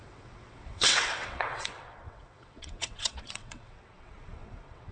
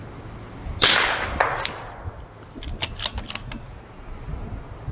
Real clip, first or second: second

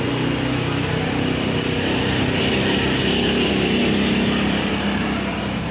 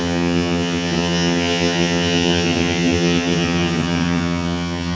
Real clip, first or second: first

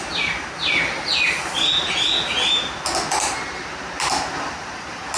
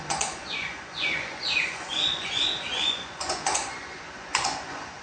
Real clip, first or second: first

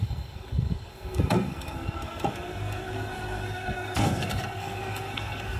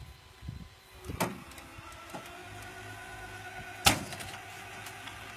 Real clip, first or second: second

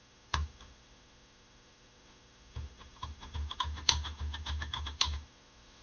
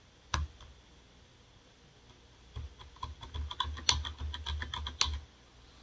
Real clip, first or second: second